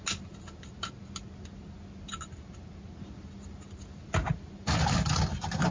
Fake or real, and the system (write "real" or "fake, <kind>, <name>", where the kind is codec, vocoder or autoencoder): real